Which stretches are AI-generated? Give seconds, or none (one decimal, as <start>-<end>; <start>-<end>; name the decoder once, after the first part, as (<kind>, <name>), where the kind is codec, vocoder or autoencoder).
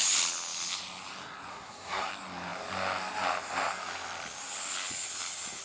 1.5-2.1 (codec, SNAC)